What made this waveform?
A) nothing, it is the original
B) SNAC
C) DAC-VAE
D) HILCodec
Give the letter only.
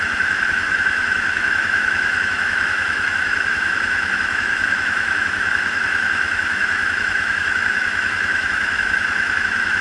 C